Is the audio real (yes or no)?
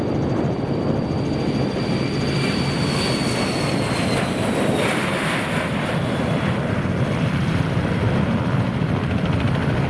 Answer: no